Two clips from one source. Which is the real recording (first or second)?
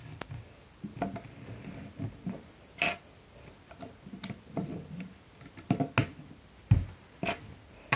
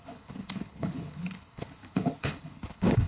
first